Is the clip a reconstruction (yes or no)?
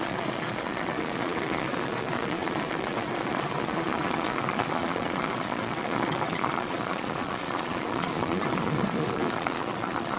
yes